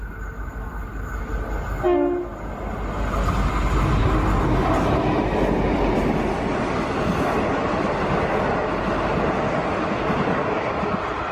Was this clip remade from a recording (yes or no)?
no